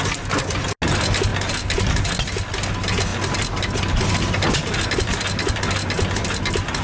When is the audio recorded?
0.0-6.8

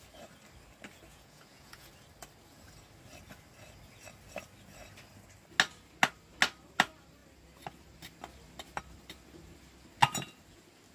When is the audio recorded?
0.0-1.1; 1.9-10.9

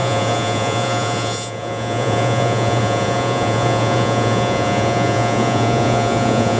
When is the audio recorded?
none

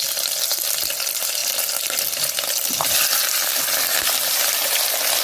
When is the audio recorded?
0.0-5.2